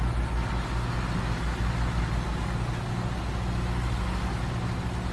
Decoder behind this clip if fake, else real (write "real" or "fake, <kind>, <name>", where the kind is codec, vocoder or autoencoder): real